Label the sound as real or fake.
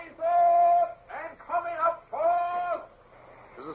real